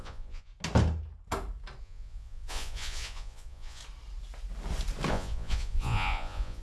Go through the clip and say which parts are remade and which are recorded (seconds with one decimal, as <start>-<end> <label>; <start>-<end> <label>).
0.0-0.5 remade; 0.5-1.8 recorded; 1.8-3.8 remade; 3.8-5.1 recorded; 5.1-6.6 remade